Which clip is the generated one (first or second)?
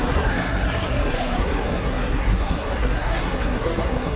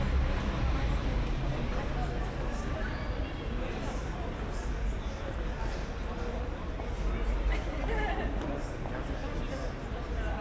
first